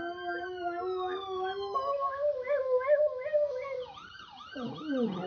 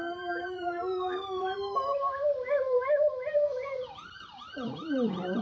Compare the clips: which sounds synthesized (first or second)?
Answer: second